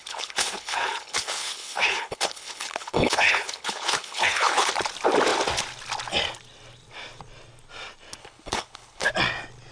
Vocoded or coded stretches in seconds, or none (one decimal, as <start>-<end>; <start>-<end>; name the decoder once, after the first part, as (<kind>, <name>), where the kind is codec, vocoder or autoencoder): 0.0-4.7 (codec, HILCodec); 8.2-9.1